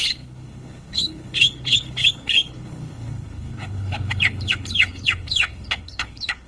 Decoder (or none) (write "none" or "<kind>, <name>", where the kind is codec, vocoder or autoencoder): codec, HILCodec